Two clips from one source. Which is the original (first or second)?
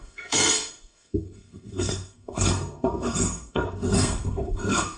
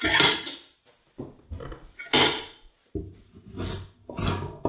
second